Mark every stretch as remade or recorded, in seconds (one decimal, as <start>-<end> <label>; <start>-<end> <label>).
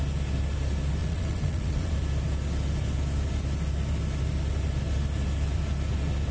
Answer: 0.0-1.0 recorded; 1.0-1.9 remade; 1.9-6.3 recorded